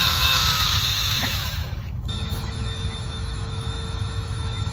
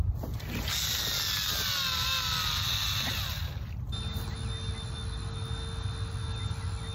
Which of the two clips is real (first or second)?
second